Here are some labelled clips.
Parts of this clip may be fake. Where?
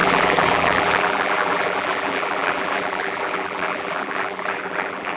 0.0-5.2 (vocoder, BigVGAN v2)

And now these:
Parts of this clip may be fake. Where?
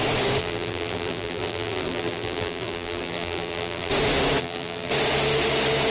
0.4-3.9 (vocoder, BigVGAN v2); 4.4-4.9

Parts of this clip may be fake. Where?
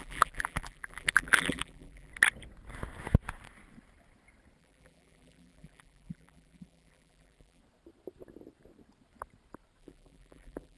0.0-2.1 (vocoder, BigVGAN v2); 4.6-7.6; 9.8-10.8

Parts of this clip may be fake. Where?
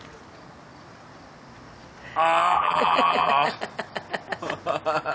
2.5-3.3 (vocoder, BigVGAN v2)